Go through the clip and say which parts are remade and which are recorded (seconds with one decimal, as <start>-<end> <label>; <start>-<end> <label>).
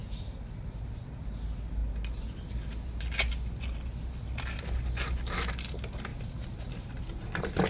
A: 0.0-6.1 recorded; 6.1-6.6 remade; 6.6-7.7 recorded